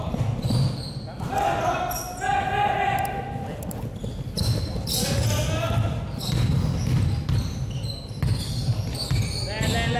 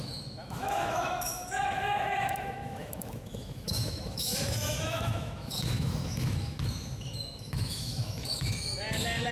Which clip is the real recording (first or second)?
first